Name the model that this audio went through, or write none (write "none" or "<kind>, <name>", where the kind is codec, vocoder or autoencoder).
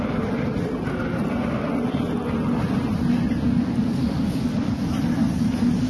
none